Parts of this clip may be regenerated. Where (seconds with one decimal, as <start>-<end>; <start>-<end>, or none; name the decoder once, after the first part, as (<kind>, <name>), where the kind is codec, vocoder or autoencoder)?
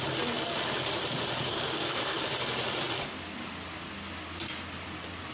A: 1.5-2.2 (codec, SNAC)